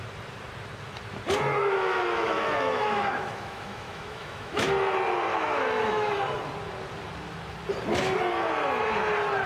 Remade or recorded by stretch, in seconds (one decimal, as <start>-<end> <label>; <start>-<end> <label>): 0.0-1.6 recorded; 1.6-4.7 remade; 4.7-5.3 recorded; 5.3-6.1 remade; 6.1-9.5 recorded